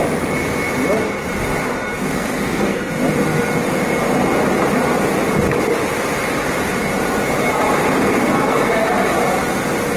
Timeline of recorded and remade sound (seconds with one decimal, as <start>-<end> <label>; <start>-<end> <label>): 0.0-2.1 recorded; 2.1-2.9 remade; 2.9-8.0 recorded; 8.0-8.7 remade; 8.7-10.0 recorded